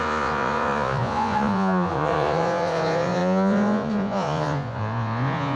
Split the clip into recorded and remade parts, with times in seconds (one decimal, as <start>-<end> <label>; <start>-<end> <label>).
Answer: 0.0-5.6 remade